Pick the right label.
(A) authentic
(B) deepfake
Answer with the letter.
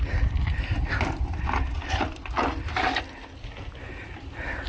A